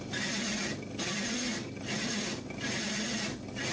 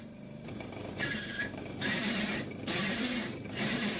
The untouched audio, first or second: first